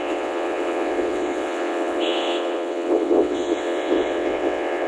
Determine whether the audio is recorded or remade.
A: remade